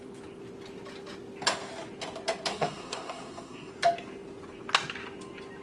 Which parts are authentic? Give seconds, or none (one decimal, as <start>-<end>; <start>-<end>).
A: 0.0-2.5; 3.7-5.6